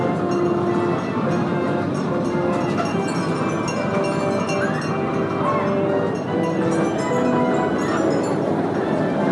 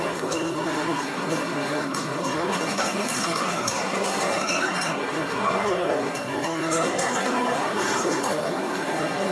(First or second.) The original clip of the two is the first